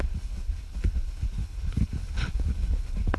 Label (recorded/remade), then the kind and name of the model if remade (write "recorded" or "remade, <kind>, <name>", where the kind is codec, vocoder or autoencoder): remade, codec, HILCodec